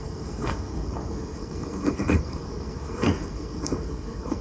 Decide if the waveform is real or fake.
fake